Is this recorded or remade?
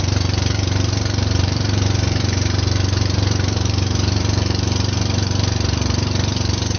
remade